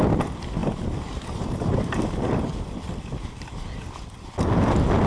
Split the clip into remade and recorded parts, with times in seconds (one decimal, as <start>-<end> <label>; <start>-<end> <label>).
0.0-0.6 recorded; 0.6-1.8 remade; 1.8-5.1 recorded